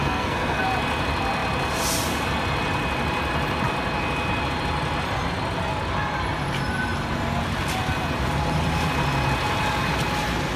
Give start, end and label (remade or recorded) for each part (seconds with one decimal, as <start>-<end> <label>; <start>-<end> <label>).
0.0-0.6 remade; 0.6-10.6 recorded